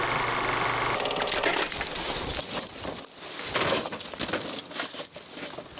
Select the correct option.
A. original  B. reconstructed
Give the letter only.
A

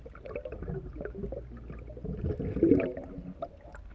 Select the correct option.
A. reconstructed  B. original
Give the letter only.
B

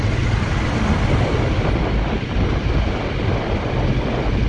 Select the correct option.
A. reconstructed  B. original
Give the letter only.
B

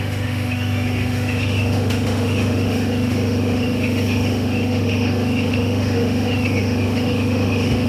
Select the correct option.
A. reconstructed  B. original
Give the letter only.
A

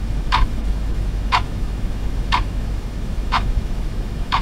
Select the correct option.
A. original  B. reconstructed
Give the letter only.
B